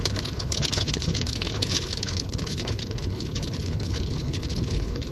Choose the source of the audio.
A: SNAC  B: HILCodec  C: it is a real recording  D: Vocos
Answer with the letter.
B